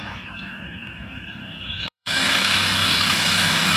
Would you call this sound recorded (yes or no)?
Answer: no